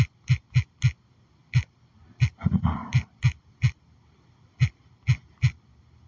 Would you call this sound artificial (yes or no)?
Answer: no